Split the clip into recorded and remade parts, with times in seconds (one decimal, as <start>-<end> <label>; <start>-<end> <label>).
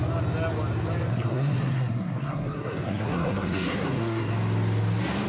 0.0-1.1 recorded; 1.1-4.3 remade; 4.3-5.3 recorded